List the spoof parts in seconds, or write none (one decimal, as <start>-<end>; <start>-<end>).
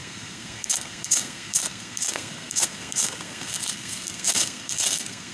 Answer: 0.0-5.3